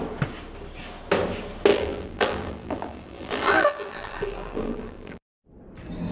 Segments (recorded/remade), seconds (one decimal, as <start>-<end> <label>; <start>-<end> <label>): 0.0-1.7 recorded; 1.7-5.4 remade; 5.4-6.1 recorded